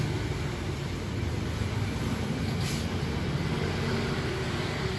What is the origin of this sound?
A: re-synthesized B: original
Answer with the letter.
B